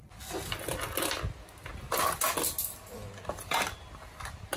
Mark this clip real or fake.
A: real